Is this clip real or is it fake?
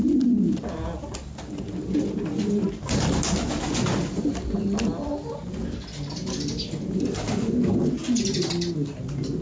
real